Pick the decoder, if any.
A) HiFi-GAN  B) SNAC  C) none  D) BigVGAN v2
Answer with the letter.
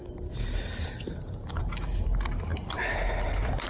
D